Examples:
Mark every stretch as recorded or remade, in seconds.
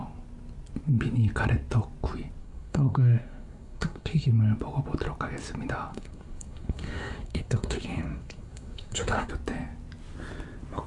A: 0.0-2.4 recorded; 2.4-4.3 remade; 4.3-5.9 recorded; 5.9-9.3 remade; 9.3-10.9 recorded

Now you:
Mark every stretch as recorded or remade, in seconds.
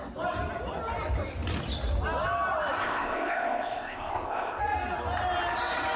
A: 0.0-2.8 recorded; 2.8-4.6 remade; 4.6-6.0 recorded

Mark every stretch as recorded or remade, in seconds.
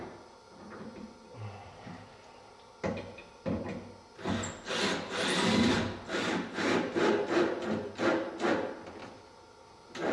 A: 0.0-1.6 recorded; 1.6-2.3 remade; 2.3-10.1 recorded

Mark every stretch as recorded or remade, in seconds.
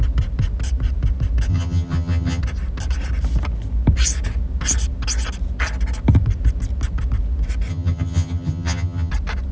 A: 0.0-1.5 recorded; 1.5-2.4 remade; 2.4-7.7 recorded; 7.7-9.1 remade; 9.1-9.5 recorded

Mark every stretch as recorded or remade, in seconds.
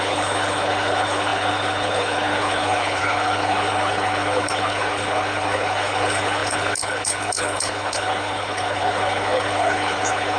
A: 0.0-10.4 remade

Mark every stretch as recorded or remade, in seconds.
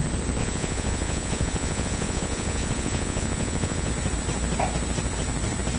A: 0.0-0.4 recorded; 0.4-3.9 remade; 3.9-5.8 recorded